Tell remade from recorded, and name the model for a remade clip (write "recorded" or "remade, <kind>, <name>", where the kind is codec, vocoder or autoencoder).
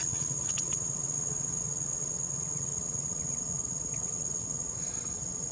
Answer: remade, vocoder, WaveNeXt